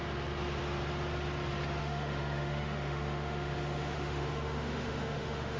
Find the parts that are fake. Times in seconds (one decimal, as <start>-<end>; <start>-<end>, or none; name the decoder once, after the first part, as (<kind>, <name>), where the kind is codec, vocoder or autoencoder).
1.8-5.6 (autoencoder, DAC-VAE)